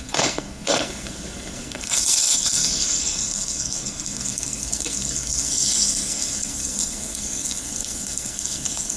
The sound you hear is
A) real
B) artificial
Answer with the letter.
B